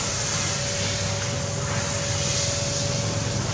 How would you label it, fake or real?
real